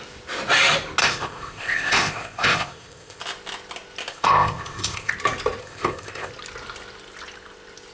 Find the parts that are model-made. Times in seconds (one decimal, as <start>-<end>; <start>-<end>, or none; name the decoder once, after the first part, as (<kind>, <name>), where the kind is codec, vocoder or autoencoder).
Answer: 1.0-3.2 (codec, ZipCodec); 4.1-5.1; 5.6-6.3

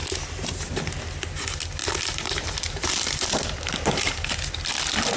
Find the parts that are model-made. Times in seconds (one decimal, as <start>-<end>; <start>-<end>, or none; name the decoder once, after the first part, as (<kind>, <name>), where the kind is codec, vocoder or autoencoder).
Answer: 0.0-0.8 (vocoder, BigVGAN v2); 1.8-4.1

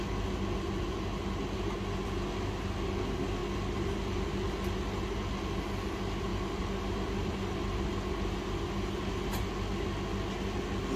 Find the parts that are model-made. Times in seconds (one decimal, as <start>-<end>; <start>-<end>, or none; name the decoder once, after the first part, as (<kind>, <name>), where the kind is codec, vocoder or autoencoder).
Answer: 6.3-7.3 (vocoder, BigVGAN v2)